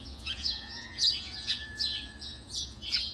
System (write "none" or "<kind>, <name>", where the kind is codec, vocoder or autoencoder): vocoder, Vocos